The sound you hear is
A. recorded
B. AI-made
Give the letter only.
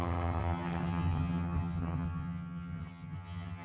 B